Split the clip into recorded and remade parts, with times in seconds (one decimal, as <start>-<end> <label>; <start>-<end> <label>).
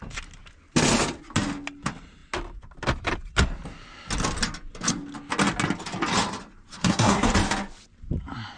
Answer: 0.0-6.7 recorded; 6.7-7.3 remade; 7.3-8.6 recorded